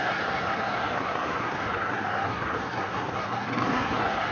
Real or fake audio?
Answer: fake